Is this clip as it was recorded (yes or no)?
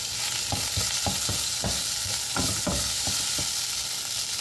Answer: yes